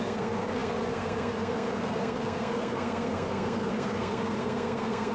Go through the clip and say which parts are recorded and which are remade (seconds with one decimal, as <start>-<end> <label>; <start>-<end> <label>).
0.0-5.1 remade